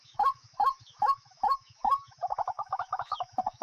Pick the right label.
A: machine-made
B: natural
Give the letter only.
A